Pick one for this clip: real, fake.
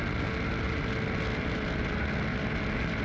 real